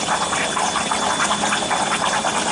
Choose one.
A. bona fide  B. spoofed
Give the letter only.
A